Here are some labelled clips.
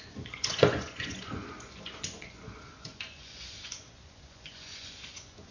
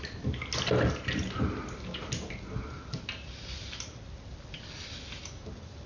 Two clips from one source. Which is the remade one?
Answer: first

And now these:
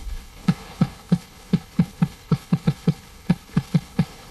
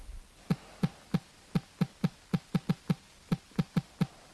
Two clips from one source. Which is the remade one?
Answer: first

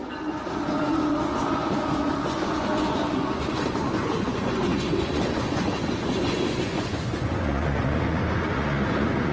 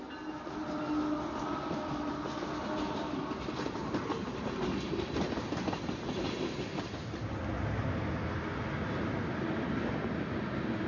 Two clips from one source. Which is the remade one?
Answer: first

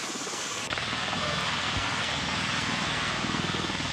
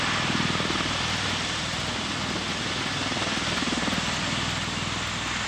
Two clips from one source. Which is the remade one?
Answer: first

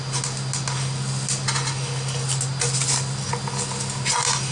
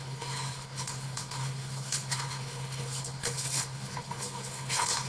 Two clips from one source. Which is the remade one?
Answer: second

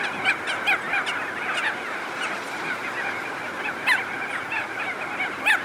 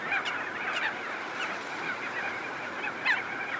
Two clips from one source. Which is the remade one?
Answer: second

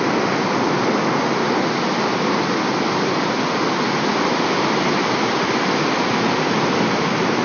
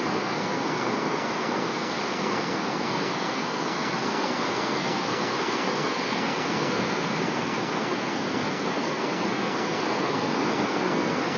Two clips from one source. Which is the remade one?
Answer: second